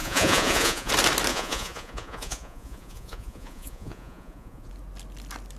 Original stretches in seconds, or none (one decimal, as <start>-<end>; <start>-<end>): 0.9-1.3; 4.7-5.6